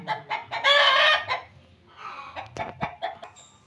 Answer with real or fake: real